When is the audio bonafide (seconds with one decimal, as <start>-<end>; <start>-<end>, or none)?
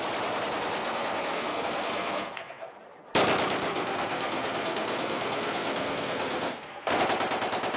0.0-0.8; 2.7-3.7; 7.0-7.8